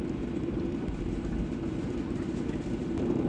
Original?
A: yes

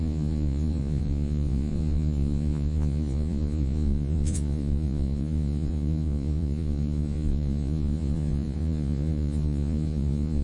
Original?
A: no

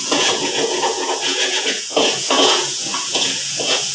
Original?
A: no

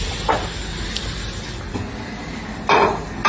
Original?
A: yes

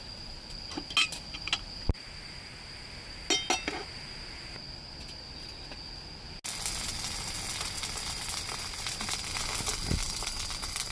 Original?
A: yes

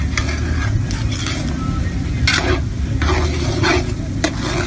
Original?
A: yes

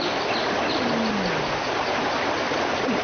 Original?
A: yes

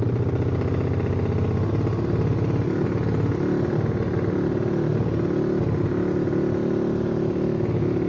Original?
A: yes